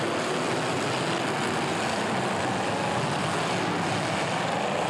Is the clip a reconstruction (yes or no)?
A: no